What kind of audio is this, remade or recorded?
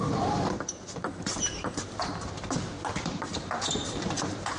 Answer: remade